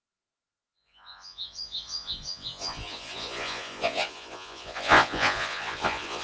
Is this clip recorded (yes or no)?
no